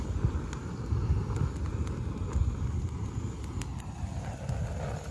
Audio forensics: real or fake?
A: real